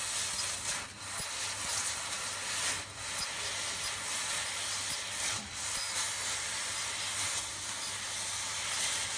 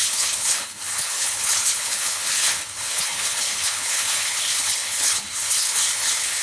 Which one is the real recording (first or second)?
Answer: first